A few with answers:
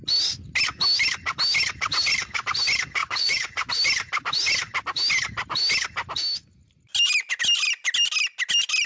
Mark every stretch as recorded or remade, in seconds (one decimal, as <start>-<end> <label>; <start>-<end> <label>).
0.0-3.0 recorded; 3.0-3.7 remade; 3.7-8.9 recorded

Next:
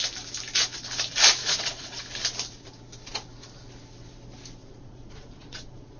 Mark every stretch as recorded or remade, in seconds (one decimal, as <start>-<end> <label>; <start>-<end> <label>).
0.0-1.4 recorded; 1.4-2.0 remade; 2.0-4.6 recorded; 4.6-6.0 remade

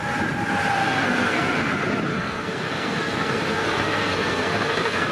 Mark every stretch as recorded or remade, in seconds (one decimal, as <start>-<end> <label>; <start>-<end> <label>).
0.0-0.8 recorded; 0.8-1.7 remade; 1.7-2.1 recorded; 2.1-5.1 remade

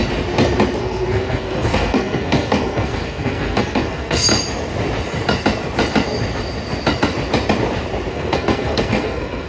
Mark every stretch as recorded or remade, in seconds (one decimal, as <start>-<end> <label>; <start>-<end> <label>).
0.0-0.8 recorded; 0.8-4.3 remade; 4.3-8.1 recorded; 8.1-9.5 remade

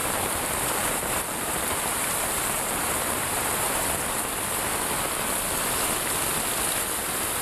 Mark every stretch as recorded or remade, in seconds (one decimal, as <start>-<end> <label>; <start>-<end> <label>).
0.0-4.0 remade; 4.0-7.4 recorded

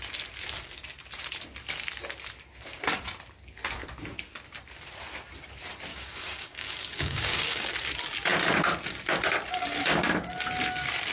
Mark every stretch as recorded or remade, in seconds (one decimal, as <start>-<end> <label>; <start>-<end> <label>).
0.0-5.9 recorded; 5.9-7.7 remade; 7.7-11.1 recorded